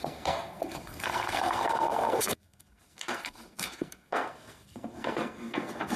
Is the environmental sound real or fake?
fake